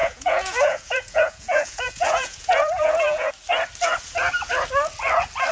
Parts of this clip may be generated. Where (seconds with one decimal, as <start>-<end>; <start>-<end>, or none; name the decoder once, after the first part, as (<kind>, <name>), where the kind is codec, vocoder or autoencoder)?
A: 0.0-3.3 (vocoder, Vocos)